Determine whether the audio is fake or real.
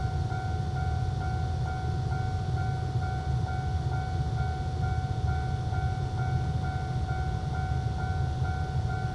real